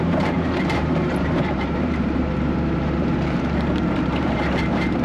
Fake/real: fake